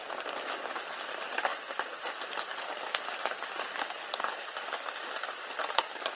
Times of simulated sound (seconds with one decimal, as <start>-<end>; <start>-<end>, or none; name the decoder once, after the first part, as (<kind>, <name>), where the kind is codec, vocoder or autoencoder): 1.5-2.1 (vocoder, Vocos)